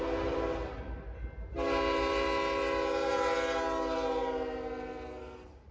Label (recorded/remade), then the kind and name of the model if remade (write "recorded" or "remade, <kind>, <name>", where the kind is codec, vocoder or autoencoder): recorded